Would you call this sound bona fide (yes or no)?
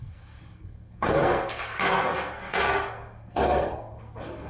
no